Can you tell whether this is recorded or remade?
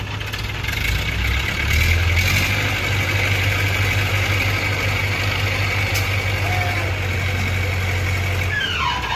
recorded